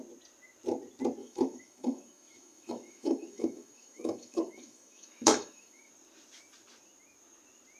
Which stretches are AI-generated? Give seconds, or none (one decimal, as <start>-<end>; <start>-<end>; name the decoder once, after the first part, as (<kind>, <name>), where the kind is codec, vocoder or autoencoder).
1.2-5.9 (autoencoder, DAC-VAE)